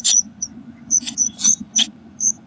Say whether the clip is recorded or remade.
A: remade